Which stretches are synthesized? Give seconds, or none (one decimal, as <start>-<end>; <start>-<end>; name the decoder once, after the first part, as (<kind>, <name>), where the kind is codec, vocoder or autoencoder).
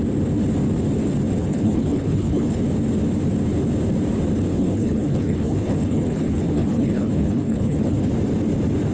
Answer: 1.4-2.6 (codec, HILCodec); 4.5-8.1